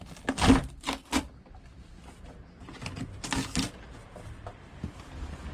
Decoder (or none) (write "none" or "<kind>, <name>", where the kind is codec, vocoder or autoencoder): none